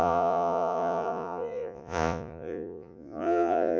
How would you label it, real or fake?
fake